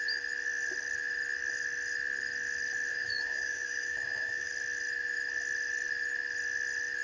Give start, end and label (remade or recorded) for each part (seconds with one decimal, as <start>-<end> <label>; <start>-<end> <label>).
0.0-2.9 recorded; 2.9-4.5 remade; 4.5-7.0 recorded